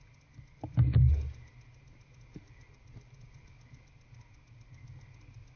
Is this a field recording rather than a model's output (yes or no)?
yes